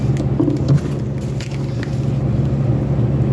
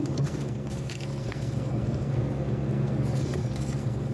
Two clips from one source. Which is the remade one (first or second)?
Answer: second